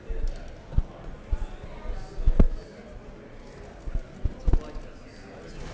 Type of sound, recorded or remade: recorded